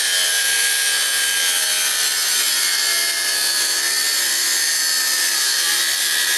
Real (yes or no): yes